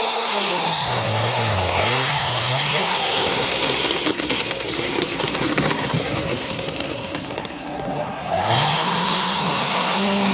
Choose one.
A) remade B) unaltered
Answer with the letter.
A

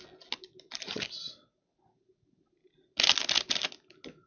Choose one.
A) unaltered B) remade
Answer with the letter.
A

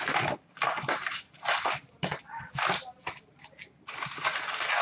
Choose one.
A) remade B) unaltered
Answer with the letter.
B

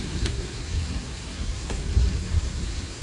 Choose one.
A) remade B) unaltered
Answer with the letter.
A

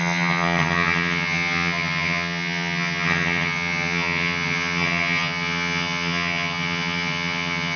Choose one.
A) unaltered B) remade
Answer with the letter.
B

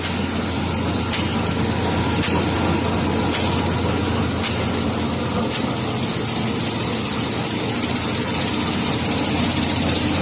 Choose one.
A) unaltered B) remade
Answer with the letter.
A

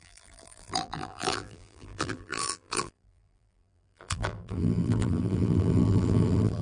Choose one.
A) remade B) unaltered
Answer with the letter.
A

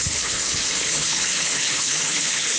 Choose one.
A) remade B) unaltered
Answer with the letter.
A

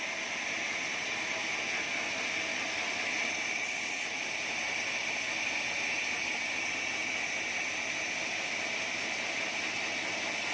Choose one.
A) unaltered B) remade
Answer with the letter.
A